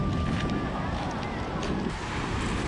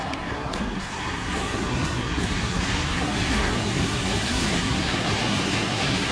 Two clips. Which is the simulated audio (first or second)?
second